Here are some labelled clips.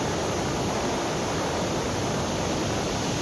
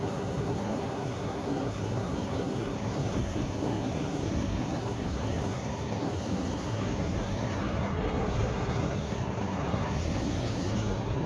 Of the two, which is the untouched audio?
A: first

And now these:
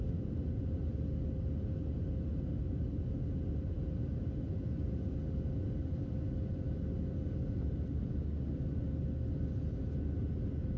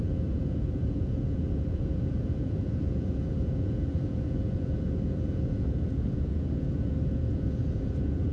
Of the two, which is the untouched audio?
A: first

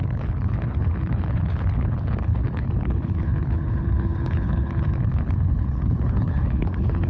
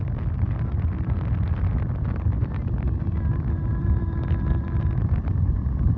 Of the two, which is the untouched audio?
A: second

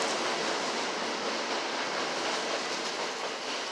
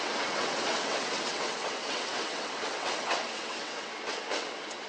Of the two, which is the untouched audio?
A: first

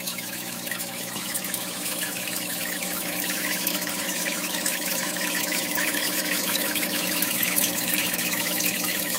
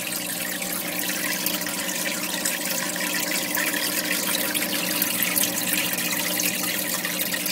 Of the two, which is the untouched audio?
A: second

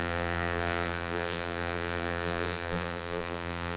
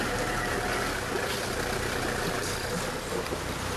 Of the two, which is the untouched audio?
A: second